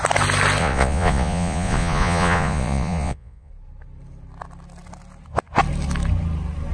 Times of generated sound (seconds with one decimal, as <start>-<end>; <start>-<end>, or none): 0.6-3.5